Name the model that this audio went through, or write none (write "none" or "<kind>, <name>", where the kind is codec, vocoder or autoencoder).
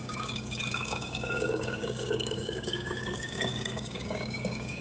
codec, DAC